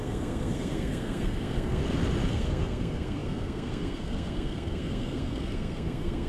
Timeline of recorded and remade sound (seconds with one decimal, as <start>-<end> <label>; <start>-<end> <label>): 0.0-1.8 remade; 1.8-2.3 recorded; 2.3-6.3 remade